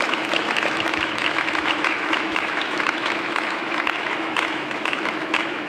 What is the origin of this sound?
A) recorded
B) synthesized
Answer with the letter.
B